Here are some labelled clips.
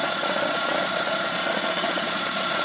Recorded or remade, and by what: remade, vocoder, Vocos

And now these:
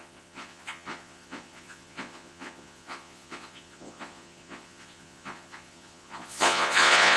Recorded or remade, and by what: remade, vocoder, Vocos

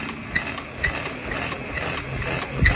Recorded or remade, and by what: recorded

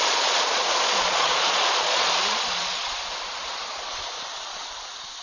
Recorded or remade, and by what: remade, vocoder, Vocos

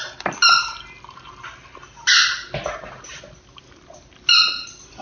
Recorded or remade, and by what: recorded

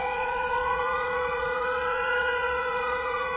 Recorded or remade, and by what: remade, vocoder, Vocos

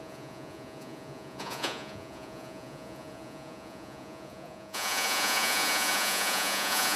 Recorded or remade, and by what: remade, vocoder, Vocos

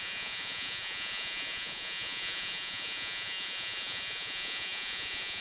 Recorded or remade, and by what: remade, vocoder, Vocos